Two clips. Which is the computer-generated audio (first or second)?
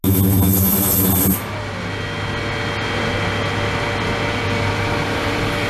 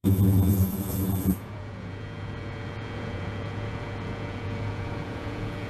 second